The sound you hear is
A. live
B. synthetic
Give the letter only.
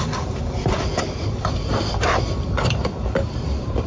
B